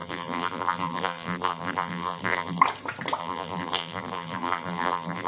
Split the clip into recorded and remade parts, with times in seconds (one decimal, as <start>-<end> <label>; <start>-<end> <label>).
0.0-2.6 remade; 2.6-3.2 recorded; 3.2-5.3 remade